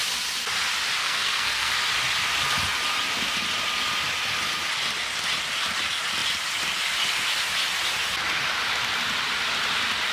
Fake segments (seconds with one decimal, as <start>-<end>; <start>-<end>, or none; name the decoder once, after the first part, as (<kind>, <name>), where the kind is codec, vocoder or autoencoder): 1.0-1.8 (codec, SNAC)